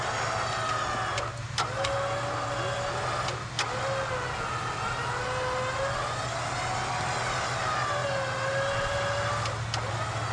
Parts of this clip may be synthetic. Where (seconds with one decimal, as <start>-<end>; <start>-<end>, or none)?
none